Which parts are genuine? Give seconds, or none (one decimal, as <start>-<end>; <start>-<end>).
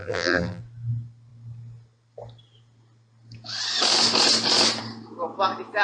0.6-5.8